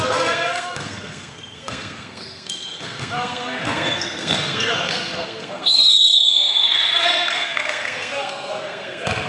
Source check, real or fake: fake